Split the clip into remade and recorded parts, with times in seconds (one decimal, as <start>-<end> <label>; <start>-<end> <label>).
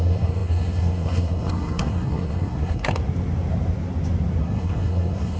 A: 0.0-3.0 remade; 3.0-4.4 recorded; 4.4-5.4 remade